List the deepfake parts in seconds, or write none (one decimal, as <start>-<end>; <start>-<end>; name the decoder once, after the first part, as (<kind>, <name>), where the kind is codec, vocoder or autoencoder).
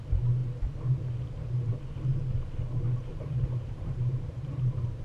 3.1-5.0 (vocoder, BigVGAN v2)